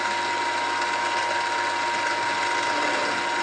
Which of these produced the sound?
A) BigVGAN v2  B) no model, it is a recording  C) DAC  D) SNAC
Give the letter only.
B